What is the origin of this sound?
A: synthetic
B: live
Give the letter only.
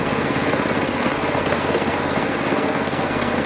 A